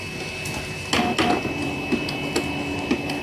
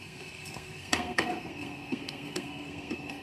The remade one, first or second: second